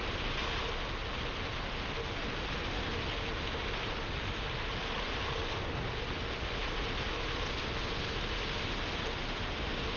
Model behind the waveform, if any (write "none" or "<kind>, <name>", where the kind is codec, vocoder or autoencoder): none